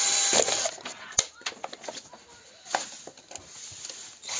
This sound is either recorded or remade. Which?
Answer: recorded